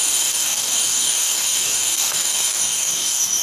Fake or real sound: fake